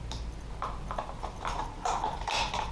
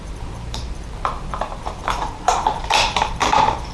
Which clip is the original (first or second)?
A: first